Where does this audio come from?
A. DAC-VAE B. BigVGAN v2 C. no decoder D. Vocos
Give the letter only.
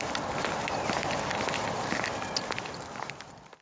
C